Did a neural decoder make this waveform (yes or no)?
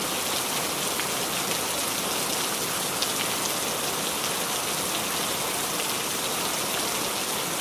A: no